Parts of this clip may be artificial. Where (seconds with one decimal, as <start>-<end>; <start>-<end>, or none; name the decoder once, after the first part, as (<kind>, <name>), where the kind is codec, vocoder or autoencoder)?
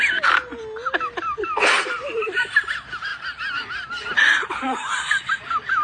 3.1-3.9 (vocoder, BigVGAN v2); 4.3-5.1